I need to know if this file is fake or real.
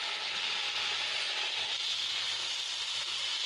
real